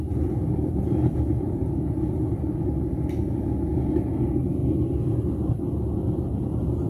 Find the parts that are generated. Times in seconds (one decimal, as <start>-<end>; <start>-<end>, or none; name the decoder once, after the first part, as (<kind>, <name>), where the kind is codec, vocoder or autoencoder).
none